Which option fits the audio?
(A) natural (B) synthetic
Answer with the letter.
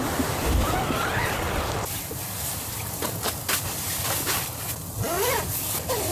A